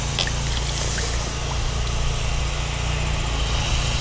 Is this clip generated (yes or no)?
no